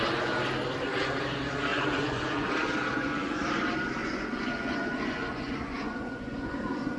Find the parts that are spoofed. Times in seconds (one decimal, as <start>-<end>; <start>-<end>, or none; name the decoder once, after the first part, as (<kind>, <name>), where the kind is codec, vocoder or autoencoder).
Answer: 1.7-2.5 (vocoder, Vocos); 2.9-3.4; 4.0-7.0